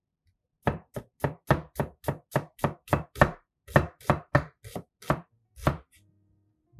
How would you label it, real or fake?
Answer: real